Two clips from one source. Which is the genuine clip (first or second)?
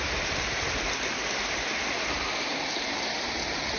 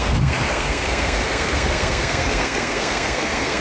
first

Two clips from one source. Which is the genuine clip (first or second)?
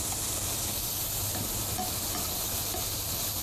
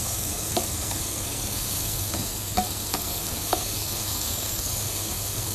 first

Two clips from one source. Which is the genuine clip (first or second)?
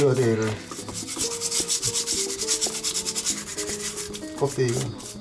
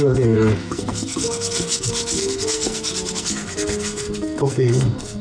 first